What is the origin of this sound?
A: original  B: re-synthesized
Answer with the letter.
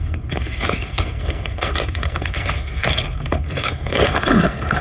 B